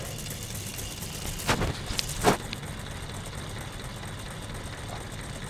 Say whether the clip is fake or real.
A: real